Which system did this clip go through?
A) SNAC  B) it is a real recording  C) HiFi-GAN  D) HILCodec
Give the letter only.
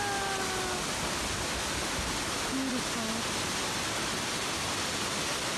B